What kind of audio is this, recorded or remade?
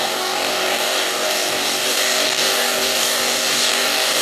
remade